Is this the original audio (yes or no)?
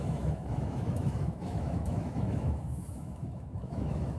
no